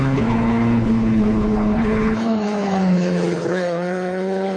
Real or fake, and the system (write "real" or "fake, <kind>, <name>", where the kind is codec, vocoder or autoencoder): fake, codec, HILCodec